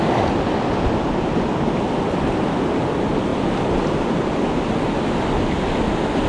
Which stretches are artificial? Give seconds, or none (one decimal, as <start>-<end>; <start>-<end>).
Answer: none

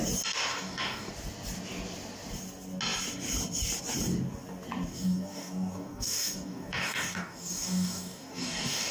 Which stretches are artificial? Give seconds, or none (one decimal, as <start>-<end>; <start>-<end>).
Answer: 0.5-1.1; 4.9-8.9